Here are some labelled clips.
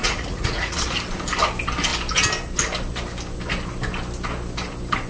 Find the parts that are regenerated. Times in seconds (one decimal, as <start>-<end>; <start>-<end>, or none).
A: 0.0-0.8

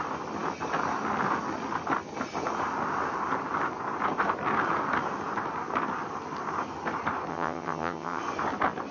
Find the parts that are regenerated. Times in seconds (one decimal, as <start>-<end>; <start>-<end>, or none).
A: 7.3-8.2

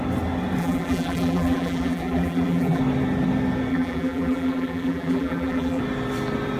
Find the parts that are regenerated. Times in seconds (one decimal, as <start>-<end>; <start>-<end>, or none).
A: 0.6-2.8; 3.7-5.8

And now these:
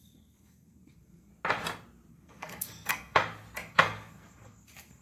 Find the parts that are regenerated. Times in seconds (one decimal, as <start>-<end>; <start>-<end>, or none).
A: 0.0-1.3; 2.1-3.2; 3.7-5.0

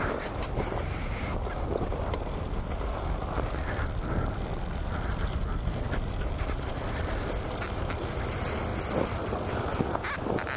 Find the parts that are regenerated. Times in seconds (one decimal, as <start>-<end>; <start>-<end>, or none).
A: none

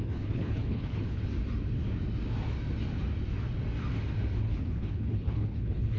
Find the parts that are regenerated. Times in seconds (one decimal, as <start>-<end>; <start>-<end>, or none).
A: 0.0-1.2; 4.4-6.0